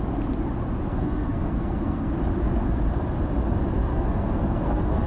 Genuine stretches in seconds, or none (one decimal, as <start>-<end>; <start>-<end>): 0.0-0.9; 2.1-3.9